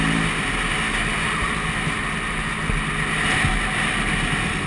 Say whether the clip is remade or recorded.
recorded